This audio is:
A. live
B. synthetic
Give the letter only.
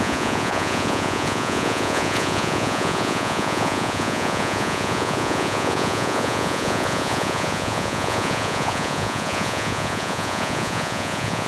B